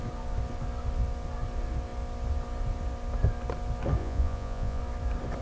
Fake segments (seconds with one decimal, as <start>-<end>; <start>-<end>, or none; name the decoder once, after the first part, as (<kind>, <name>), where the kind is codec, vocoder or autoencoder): 4.0-4.8 (vocoder, Vocos)